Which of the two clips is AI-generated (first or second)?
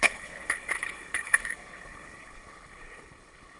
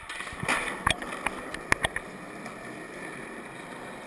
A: first